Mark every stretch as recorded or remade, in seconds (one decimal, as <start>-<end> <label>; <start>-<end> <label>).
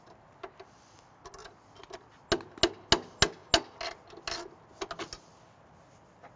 0.0-6.4 recorded